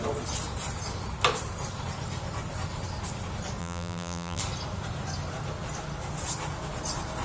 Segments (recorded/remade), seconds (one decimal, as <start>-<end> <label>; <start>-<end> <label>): 0.0-3.6 recorded; 3.6-4.4 remade; 4.4-7.2 recorded